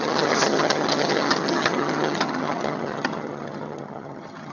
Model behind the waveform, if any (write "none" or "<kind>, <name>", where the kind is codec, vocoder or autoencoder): vocoder, HiFi-GAN